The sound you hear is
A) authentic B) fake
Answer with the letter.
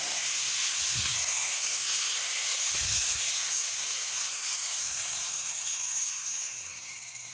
B